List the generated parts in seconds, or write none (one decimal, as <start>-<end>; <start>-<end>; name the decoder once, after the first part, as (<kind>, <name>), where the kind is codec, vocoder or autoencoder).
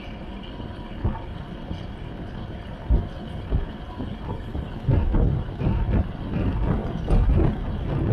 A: none